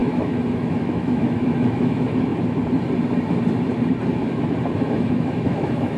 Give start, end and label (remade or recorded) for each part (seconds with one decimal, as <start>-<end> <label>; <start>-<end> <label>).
0.0-2.3 remade; 2.3-5.1 recorded; 5.1-6.0 remade